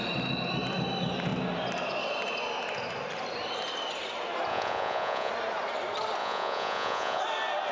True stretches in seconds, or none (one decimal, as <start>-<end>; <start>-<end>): 0.0-4.5; 5.3-6.2; 7.2-7.7